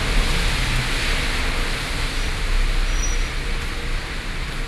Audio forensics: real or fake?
real